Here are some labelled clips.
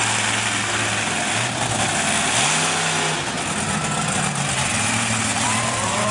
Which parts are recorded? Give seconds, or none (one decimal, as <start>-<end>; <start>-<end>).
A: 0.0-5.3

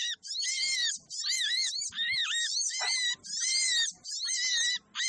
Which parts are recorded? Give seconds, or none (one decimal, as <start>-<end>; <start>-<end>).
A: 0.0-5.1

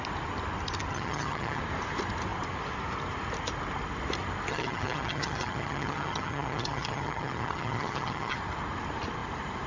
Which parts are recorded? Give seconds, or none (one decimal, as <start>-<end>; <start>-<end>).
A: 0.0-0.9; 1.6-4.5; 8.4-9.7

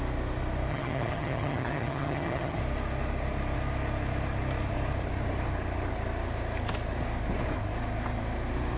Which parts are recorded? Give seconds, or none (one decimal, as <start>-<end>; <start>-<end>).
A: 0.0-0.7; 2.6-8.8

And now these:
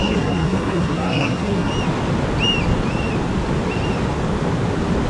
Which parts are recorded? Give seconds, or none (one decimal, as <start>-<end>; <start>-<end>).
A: 1.7-5.1

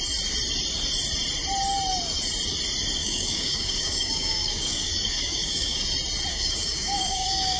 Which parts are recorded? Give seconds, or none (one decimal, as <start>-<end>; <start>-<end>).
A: 0.0-3.0; 5.8-6.3

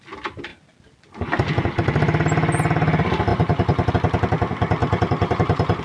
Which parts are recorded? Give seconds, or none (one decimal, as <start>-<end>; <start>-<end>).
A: 0.0-3.3; 3.9-4.8